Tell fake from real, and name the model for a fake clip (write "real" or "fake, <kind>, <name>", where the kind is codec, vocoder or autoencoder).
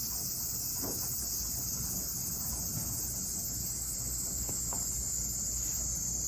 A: real